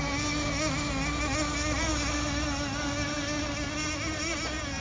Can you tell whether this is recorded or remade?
recorded